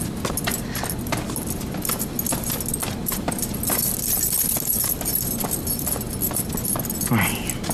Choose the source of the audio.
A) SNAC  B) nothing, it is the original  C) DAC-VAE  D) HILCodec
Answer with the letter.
B